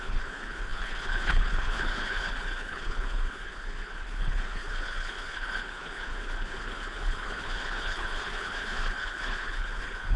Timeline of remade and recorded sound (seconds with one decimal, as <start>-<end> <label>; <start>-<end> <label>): 0.0-10.2 remade